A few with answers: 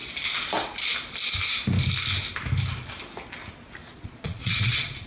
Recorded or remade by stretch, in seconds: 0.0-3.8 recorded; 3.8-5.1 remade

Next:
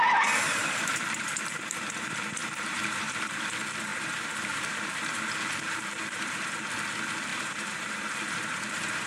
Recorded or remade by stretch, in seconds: 0.0-0.6 recorded; 0.6-3.3 remade; 3.3-3.9 recorded; 3.9-6.6 remade; 6.6-7.3 recorded; 7.3-9.1 remade

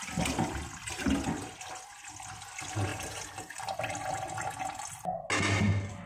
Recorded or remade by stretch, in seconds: 0.0-2.9 recorded; 2.9-3.5 remade; 3.5-6.1 recorded

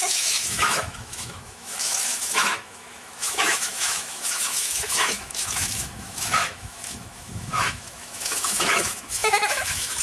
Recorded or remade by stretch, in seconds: 0.0-10.0 remade